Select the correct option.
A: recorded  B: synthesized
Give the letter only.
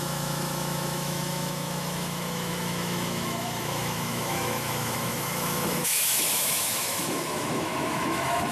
B